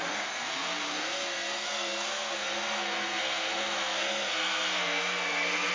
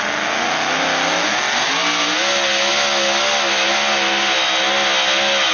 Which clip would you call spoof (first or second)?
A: first